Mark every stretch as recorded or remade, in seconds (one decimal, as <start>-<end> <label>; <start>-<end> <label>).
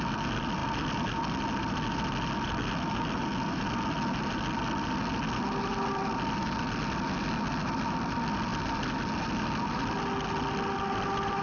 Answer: 0.0-11.4 recorded